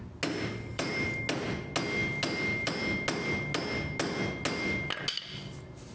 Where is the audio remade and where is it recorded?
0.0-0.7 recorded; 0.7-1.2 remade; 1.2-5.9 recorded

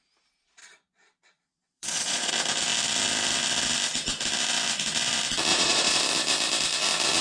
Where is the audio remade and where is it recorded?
0.0-0.6 recorded; 0.6-2.3 remade; 2.3-5.5 recorded; 5.5-6.0 remade; 6.0-7.2 recorded

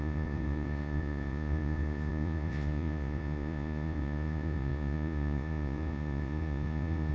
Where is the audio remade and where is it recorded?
0.0-7.1 remade

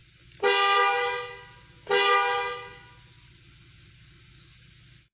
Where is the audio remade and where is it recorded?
0.0-5.1 recorded

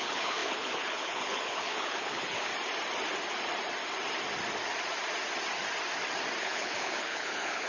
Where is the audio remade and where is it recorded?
0.0-2.5 remade; 2.5-6.4 recorded; 6.4-7.7 remade

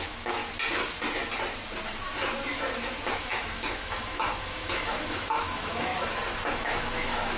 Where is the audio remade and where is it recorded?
0.0-0.4 remade; 0.4-3.2 recorded; 3.2-5.9 remade; 5.9-6.5 recorded; 6.5-7.4 remade

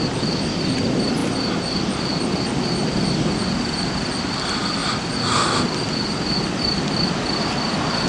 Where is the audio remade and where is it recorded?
0.0-1.2 recorded; 1.2-2.4 remade; 2.4-8.1 recorded

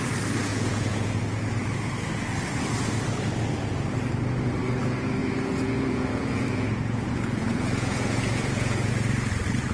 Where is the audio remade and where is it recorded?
0.0-0.5 recorded; 0.5-1.2 remade; 1.2-5.2 recorded; 5.2-8.9 remade; 8.9-9.7 recorded